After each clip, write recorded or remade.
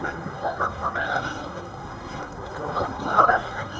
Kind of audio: remade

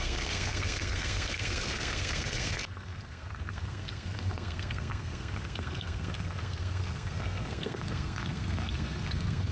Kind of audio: remade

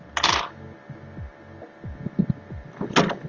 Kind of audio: recorded